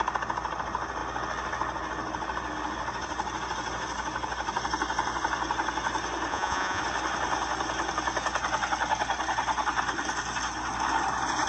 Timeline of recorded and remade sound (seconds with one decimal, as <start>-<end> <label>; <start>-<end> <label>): 0.0-6.3 recorded; 6.3-6.8 remade; 6.8-11.5 recorded